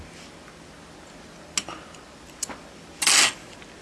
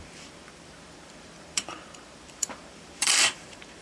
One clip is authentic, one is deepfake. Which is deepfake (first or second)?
second